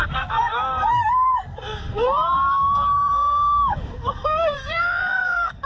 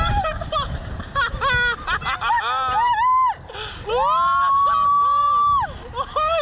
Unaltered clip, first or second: second